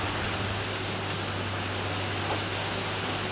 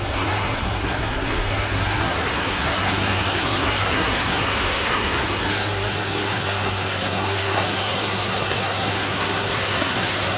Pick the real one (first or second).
first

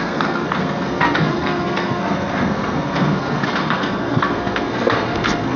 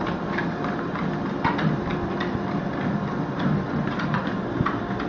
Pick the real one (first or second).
second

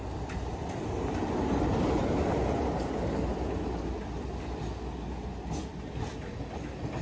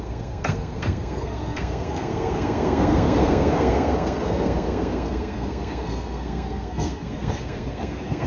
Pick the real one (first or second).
first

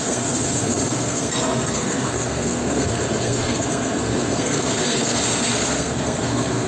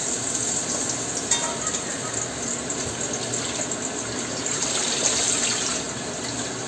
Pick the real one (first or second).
second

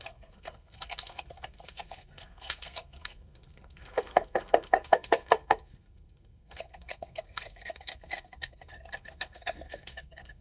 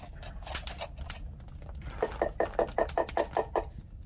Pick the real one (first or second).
second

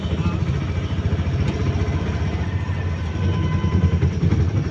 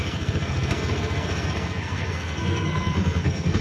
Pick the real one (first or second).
first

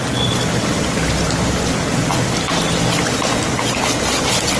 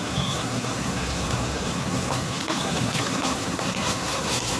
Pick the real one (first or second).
first